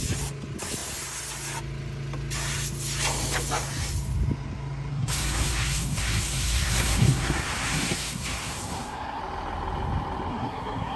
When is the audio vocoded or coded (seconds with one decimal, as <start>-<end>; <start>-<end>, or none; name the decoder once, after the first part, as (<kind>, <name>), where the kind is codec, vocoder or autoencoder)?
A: 4.9-9.2 (codec, SNAC); 10.3-11.0